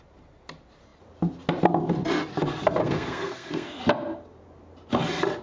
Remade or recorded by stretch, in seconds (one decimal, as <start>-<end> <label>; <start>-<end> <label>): 0.0-2.8 recorded; 2.8-3.8 remade; 3.8-5.4 recorded